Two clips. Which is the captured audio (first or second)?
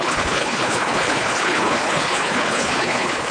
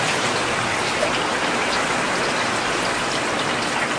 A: second